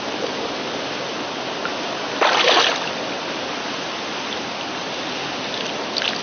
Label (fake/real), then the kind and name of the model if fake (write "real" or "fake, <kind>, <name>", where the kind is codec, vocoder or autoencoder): real